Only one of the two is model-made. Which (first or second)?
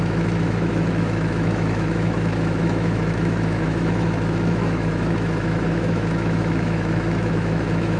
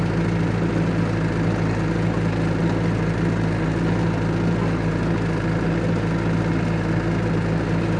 first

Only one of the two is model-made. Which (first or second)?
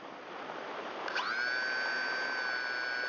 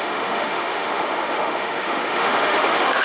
second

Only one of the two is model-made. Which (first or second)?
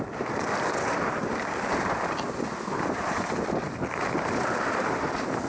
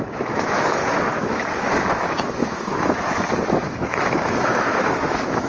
second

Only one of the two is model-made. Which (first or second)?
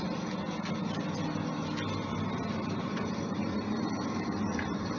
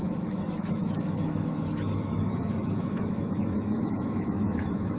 second